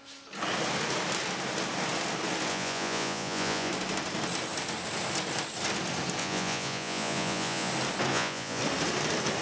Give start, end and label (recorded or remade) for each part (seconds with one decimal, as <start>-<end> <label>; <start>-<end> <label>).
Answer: 0.0-2.5 recorded; 2.5-3.7 remade; 3.7-6.2 recorded; 6.2-7.7 remade; 7.7-8.1 recorded; 8.1-8.6 remade; 8.6-9.4 recorded